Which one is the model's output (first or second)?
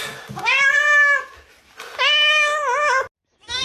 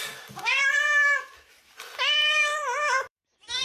second